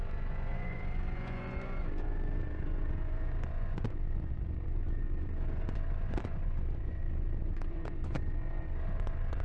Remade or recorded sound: remade